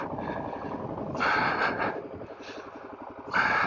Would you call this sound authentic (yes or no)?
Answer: yes